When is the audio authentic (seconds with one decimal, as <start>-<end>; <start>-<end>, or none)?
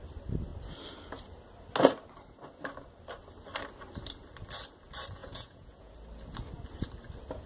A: 0.0-5.2; 5.9-7.5